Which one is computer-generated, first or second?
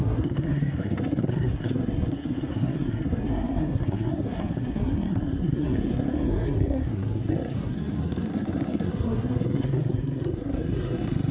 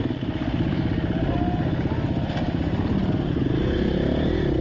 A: first